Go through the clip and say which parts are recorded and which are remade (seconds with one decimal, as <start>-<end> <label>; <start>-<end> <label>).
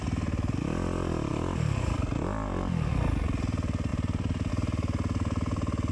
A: 0.0-1.3 recorded; 1.3-2.9 remade; 2.9-3.9 recorded; 3.9-4.5 remade; 4.5-5.9 recorded